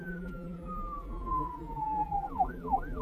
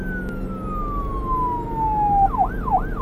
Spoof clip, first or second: first